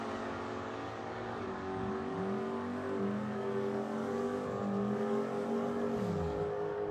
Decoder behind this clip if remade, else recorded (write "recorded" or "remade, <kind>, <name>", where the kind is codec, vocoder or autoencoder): remade, codec, DAC